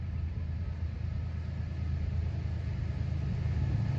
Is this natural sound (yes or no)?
yes